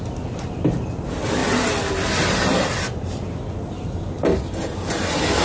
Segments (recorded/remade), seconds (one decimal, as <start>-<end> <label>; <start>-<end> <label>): 0.0-5.4 recorded